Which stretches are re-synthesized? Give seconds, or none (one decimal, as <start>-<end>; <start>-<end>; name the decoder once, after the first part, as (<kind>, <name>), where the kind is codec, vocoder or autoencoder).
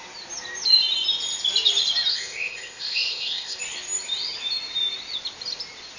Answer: 2.1-3.6 (codec, ZipCodec)